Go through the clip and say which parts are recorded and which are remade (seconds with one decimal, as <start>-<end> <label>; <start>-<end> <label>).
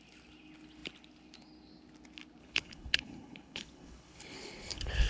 0.0-2.4 recorded; 2.4-5.1 remade